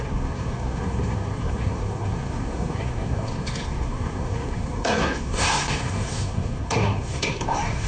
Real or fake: fake